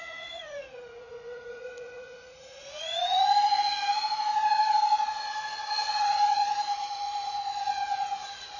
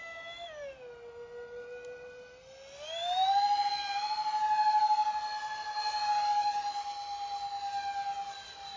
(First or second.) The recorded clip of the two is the second